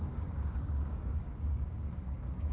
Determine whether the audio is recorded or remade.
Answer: remade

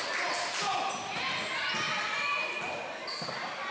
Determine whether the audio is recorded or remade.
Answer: recorded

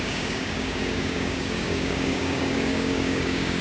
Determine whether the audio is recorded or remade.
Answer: remade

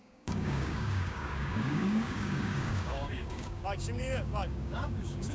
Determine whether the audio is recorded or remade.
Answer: remade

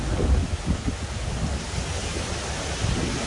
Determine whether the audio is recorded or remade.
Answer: recorded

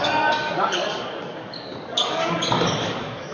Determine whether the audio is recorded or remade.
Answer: remade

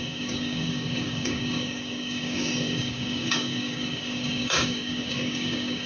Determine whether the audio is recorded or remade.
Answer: remade